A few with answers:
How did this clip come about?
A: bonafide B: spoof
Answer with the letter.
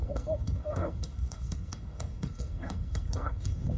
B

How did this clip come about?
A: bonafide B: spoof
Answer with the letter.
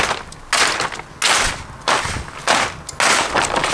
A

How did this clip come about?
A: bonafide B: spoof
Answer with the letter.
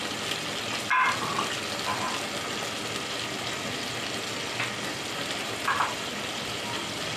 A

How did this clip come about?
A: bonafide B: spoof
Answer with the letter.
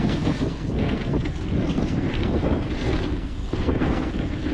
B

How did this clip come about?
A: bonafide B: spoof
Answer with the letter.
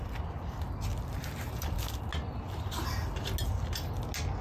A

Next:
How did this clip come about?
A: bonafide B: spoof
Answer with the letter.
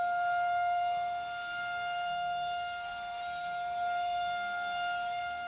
B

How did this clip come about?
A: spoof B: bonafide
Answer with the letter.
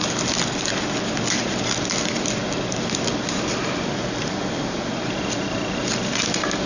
B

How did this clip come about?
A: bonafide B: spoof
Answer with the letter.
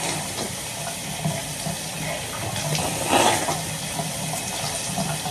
A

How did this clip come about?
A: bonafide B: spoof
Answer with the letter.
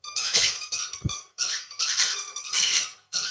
B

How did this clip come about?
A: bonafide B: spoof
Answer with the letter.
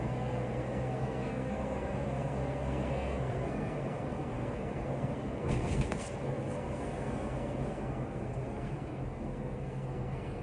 B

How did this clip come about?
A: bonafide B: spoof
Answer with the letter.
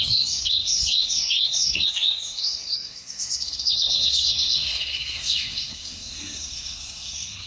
B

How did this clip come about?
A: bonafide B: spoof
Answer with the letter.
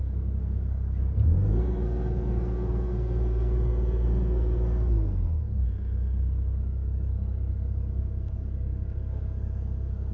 B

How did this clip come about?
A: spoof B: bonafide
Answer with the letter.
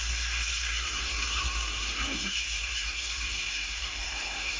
A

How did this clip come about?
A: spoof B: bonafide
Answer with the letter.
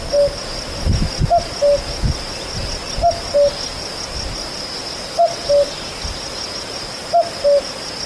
B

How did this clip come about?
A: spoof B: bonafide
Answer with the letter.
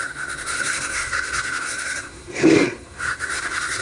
A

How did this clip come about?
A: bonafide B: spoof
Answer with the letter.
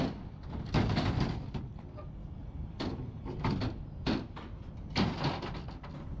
A